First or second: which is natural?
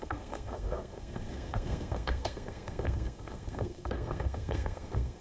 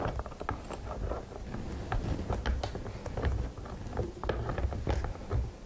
second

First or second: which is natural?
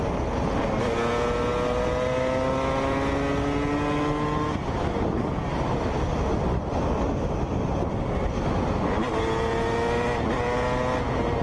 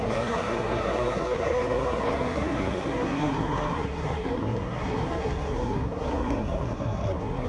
first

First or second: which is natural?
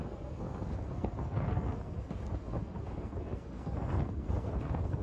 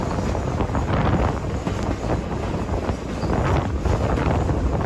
second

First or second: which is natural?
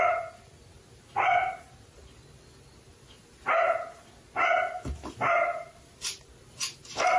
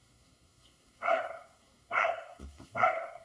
first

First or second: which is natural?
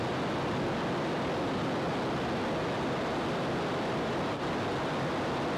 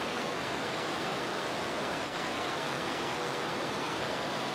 first